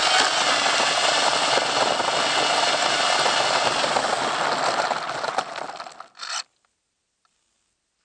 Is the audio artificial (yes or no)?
no